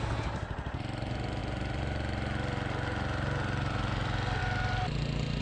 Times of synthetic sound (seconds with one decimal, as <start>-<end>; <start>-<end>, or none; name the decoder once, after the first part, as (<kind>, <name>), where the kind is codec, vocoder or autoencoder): none